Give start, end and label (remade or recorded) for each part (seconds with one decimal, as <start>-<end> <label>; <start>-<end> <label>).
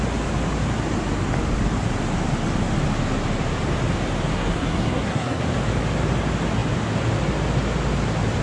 0.0-4.3 recorded; 4.3-5.4 remade; 5.4-8.4 recorded